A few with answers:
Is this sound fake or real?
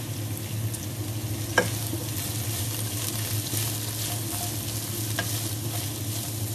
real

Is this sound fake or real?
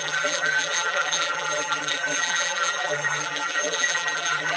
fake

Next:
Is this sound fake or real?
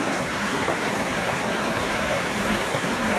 fake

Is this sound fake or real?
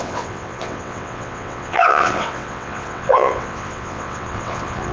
fake